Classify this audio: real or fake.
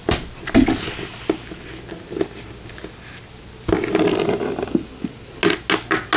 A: real